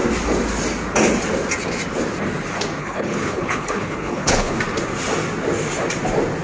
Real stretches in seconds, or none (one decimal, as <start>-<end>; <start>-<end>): 0.0-2.8; 4.6-6.4